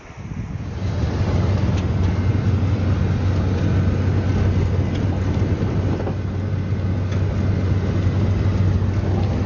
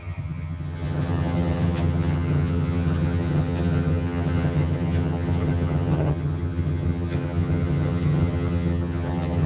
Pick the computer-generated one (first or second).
second